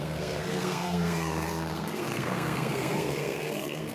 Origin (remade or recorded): remade